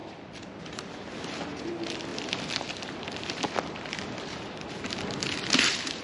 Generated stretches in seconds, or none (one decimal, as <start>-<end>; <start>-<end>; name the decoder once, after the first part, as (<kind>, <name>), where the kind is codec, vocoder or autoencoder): 0.0-6.0 (vocoder, BigVGAN v2)